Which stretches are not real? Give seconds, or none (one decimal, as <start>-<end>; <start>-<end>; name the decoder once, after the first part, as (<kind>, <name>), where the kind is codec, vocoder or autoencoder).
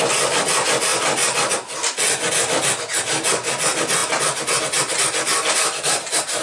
5.3-6.4 (vocoder, BigVGAN v2)